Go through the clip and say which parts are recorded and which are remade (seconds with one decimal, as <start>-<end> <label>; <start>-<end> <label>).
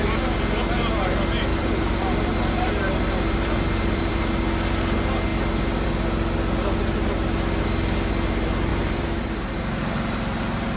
0.0-1.5 recorded; 1.5-4.1 remade; 4.1-8.7 recorded; 8.7-9.6 remade; 9.6-10.8 recorded